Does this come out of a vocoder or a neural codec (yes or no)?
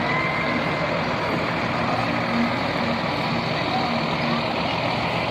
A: no